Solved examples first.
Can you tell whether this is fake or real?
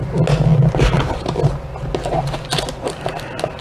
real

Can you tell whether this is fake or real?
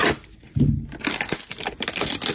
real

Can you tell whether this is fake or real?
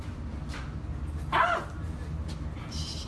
real